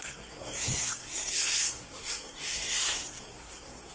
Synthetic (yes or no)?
yes